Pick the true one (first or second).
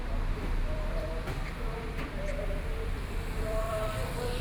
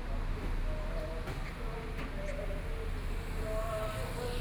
second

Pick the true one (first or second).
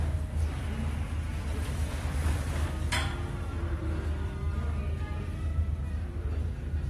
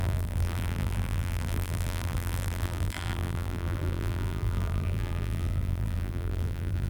first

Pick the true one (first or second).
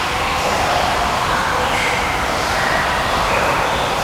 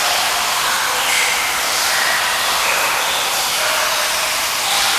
second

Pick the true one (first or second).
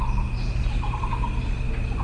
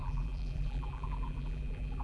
first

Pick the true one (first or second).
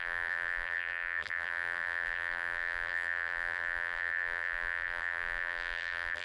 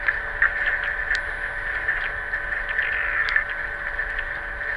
second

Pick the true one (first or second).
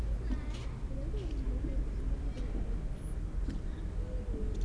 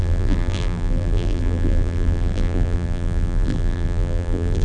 first